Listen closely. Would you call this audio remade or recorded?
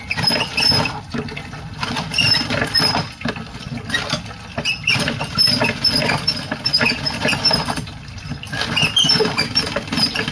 recorded